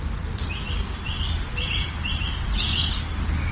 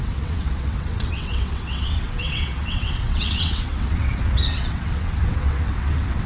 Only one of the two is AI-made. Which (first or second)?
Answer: second